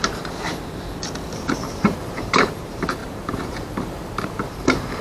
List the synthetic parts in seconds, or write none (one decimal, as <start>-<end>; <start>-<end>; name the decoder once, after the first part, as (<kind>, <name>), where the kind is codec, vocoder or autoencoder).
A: 0.0-0.5 (vocoder, BigVGAN v2); 1.5-5.0